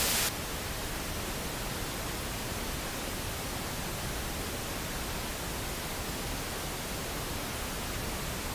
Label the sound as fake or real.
real